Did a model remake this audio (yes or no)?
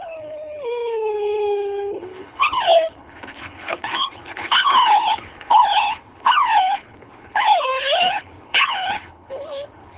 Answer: yes